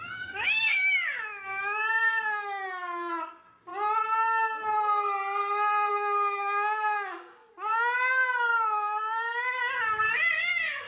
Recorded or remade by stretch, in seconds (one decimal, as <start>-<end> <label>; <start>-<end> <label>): 0.0-3.7 remade; 3.7-5.9 recorded; 5.9-10.9 remade

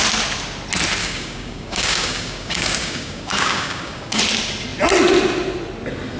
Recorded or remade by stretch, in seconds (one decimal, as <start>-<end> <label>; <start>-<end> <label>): 0.0-1.0 recorded; 1.0-4.2 remade; 4.2-6.2 recorded

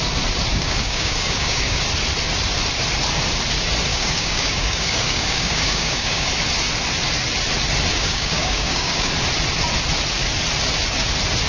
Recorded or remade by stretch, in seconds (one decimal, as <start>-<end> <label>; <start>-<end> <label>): 0.0-0.5 recorded; 0.5-1.8 remade; 1.8-3.9 recorded; 3.9-6.3 remade; 6.3-7.9 recorded; 7.9-9.1 remade; 9.1-11.5 recorded

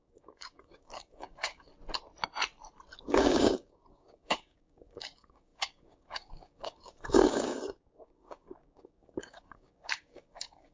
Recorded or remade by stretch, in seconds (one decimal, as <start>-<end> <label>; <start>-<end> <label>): 0.0-1.7 remade; 1.7-3.0 recorded; 3.0-10.7 remade

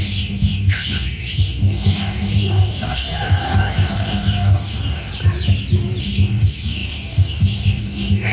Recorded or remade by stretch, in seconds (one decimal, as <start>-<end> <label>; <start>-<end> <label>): 0.0-5.1 remade; 5.1-6.0 recorded; 6.0-8.3 remade

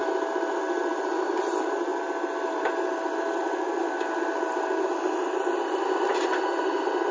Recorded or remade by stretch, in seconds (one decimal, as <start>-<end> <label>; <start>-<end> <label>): 0.0-7.1 recorded

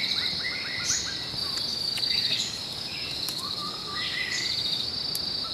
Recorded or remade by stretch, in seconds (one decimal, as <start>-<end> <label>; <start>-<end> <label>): 0.0-1.7 recorded; 1.7-4.9 remade; 4.9-5.5 recorded

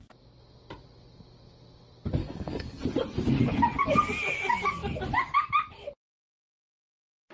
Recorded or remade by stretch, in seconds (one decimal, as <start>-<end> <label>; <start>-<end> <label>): 0.0-2.2 recorded; 2.2-2.8 remade; 2.8-7.3 recorded